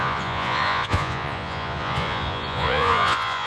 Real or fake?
fake